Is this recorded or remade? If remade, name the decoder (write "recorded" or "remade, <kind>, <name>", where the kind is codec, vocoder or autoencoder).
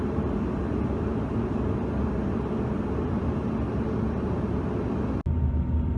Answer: recorded